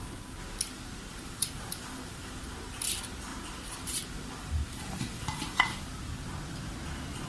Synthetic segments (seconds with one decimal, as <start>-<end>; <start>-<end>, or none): 1.1-2.4; 3.3-5.6